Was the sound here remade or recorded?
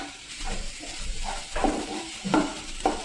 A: remade